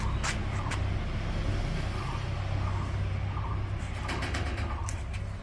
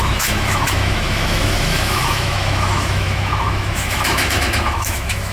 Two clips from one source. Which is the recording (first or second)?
first